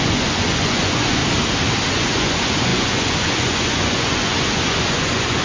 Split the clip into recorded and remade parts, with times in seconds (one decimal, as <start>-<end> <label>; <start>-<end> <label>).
0.0-1.2 remade; 1.2-1.9 recorded; 1.9-5.4 remade